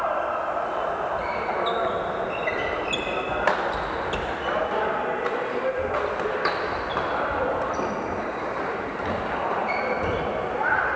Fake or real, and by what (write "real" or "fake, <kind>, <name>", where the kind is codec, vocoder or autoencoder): real